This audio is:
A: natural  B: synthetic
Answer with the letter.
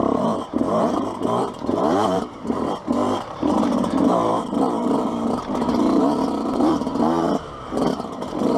B